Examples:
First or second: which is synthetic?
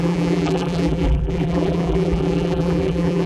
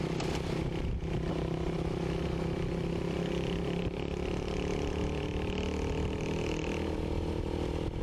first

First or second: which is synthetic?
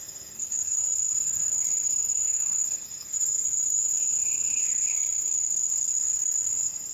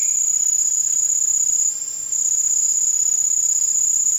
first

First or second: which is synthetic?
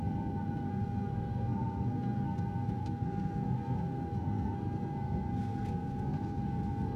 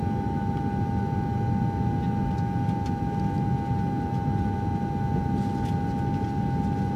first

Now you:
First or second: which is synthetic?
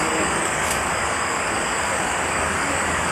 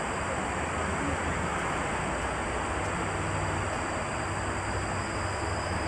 first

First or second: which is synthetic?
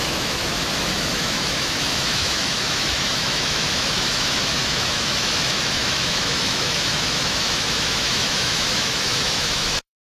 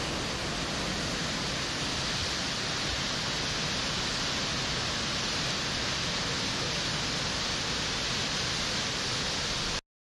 first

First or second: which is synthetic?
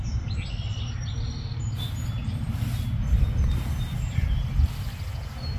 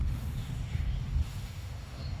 second